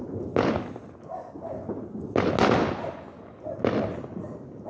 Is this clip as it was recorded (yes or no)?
yes